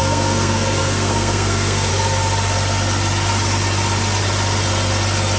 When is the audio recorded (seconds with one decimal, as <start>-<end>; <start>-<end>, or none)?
1.9-5.4